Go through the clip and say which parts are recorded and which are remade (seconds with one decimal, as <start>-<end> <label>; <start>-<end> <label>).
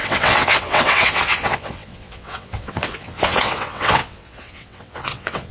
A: 0.0-5.5 remade